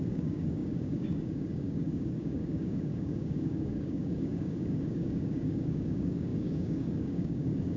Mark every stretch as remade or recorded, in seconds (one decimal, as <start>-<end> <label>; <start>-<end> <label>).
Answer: 0.0-7.8 remade